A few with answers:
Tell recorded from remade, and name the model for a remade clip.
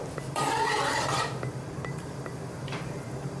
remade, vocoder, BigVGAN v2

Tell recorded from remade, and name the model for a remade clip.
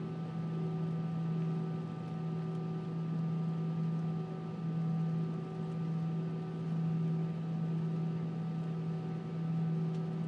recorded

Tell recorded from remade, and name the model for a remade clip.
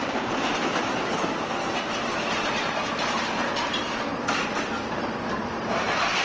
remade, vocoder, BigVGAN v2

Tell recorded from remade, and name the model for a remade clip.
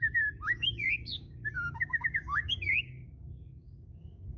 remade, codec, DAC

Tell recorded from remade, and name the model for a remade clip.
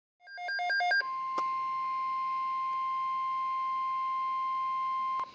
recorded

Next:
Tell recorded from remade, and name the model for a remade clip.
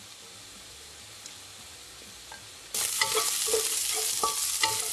recorded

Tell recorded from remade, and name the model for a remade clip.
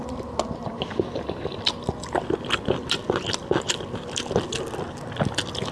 recorded